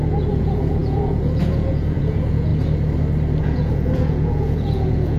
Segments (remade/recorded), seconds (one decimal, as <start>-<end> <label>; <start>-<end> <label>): 0.0-2.5 remade; 2.5-3.4 recorded; 3.4-5.2 remade